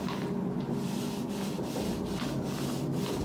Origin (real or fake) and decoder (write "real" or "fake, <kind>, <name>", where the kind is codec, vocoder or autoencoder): real